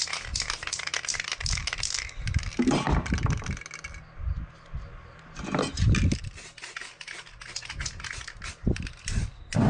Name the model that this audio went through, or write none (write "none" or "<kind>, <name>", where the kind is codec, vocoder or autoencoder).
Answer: none